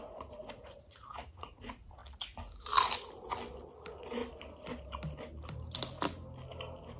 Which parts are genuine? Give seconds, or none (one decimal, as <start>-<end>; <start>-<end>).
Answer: 2.0-3.7; 4.2-7.0